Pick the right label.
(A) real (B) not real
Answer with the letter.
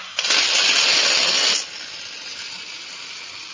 A